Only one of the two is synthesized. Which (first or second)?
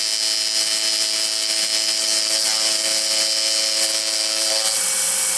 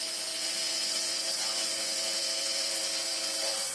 second